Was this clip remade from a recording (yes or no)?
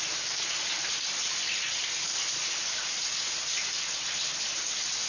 no